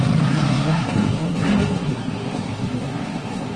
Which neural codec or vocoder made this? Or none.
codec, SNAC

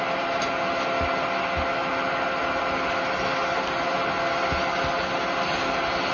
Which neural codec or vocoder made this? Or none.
none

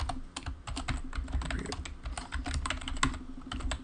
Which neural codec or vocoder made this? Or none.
none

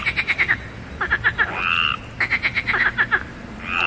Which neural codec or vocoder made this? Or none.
none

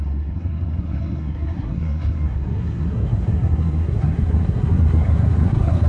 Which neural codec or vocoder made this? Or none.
codec, SNAC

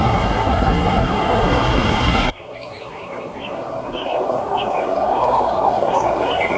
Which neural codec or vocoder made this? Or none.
codec, SNAC